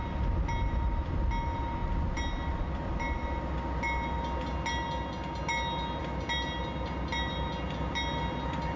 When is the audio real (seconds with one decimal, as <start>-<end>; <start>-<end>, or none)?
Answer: 0.0-8.8